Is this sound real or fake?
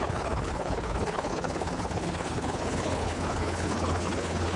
fake